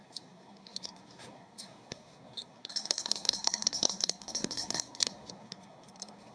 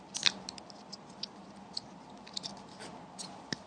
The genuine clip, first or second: second